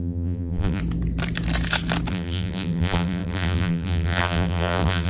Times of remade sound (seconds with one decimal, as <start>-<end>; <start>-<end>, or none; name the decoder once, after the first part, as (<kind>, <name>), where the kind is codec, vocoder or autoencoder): 0.0-0.8 (vocoder, BigVGAN v2); 2.1-5.1